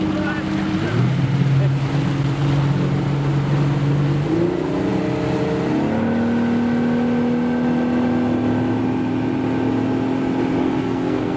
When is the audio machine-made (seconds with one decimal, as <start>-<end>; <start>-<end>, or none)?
10.6-11.4